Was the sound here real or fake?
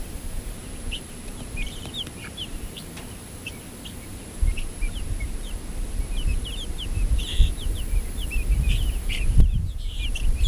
fake